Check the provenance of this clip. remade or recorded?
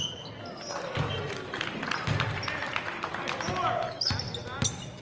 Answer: recorded